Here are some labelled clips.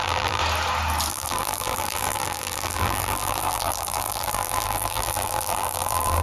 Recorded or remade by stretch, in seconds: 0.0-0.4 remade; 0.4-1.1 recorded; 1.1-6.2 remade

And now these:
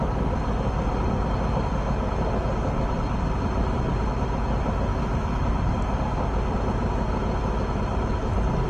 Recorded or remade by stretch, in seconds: 0.0-4.9 recorded; 4.9-5.5 remade; 5.5-8.7 recorded